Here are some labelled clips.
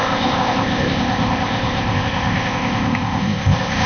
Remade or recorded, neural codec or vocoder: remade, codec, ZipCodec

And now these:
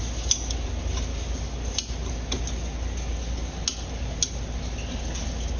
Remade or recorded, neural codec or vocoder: recorded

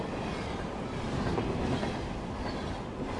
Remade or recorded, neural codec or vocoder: recorded